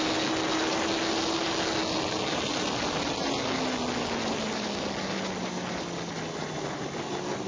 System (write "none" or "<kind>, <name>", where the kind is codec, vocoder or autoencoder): none